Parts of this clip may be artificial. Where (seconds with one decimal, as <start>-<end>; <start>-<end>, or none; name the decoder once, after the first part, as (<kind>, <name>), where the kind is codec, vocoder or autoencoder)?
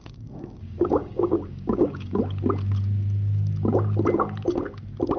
0.0-2.2 (codec, DAC)